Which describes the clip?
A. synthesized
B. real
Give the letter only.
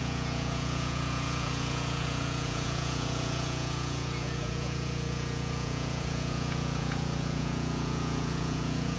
A